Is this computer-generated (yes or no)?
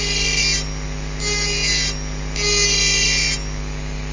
no